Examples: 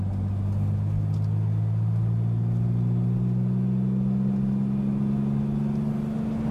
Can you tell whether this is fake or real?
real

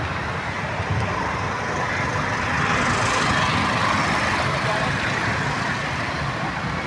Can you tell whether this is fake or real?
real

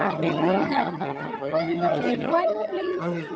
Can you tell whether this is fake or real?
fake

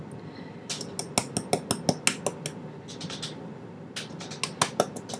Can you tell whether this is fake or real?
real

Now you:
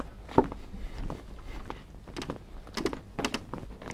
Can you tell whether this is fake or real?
real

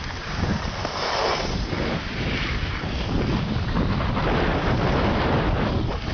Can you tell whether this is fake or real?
real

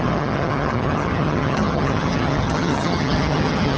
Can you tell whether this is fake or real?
fake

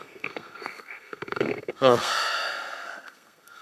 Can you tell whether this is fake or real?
fake